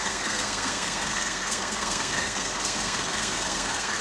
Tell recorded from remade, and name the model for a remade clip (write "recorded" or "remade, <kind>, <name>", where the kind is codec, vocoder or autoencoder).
remade, codec, SNAC